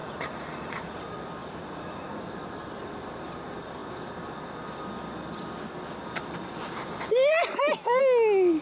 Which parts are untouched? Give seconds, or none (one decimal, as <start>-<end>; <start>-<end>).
1.0-1.4; 2.2-8.6